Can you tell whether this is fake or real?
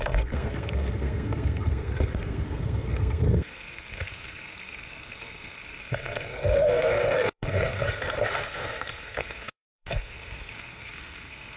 fake